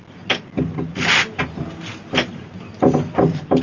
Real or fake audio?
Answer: real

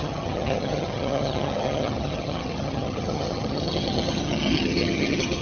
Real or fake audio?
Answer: fake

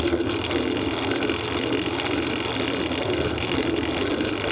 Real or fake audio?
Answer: real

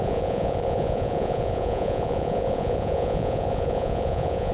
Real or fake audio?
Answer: fake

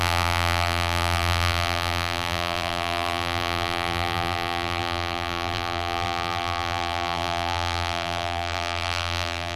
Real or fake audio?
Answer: fake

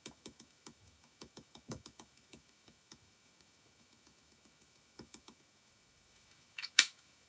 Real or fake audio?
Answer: fake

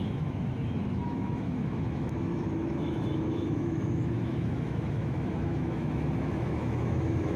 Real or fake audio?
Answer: fake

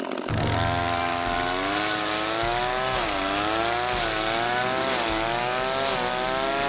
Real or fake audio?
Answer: real